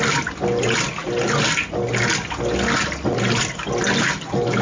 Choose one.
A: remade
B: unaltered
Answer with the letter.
B